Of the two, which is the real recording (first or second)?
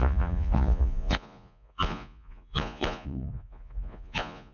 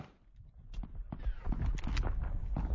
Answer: second